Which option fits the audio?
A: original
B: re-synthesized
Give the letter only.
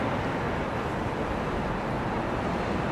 A